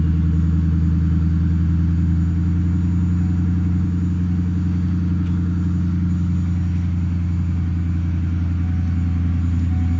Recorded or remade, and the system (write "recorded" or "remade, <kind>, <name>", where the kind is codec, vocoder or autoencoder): recorded